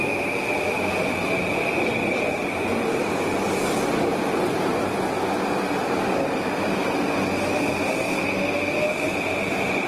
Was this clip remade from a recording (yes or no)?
no